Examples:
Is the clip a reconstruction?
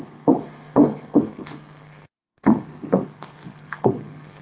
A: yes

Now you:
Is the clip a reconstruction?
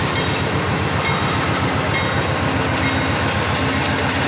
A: no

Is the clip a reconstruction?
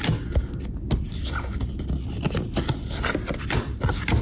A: no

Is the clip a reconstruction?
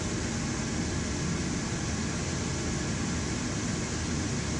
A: no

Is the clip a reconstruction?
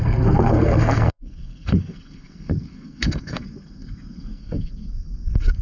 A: yes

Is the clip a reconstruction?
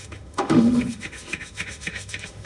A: yes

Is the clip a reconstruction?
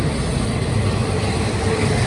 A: no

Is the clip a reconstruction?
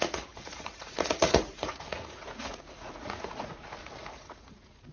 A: yes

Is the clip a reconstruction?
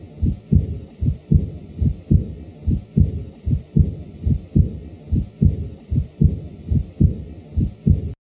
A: no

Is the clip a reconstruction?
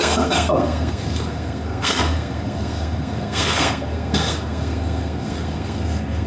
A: yes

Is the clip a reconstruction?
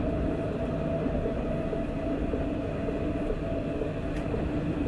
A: no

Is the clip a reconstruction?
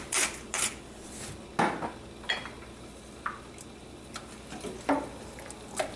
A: no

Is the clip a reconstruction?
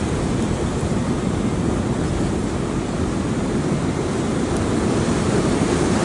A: no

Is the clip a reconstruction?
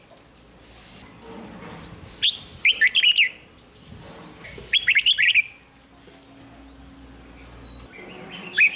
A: no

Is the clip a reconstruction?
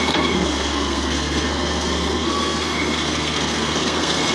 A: yes